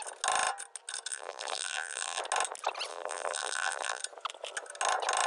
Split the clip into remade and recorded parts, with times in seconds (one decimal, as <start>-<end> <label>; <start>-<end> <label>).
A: 0.0-1.1 recorded; 1.1-2.2 remade; 2.2-2.9 recorded; 2.9-4.0 remade; 4.0-5.3 recorded